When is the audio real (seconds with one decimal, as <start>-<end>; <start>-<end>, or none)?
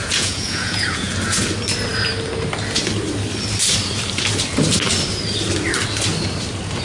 1.1-6.8